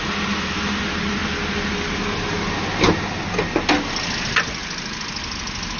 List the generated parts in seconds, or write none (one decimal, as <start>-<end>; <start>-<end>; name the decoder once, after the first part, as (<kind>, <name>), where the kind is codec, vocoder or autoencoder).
none